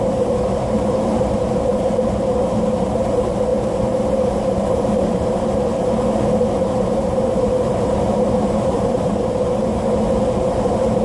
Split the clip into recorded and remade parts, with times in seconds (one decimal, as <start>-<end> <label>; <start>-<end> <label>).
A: 0.0-11.0 remade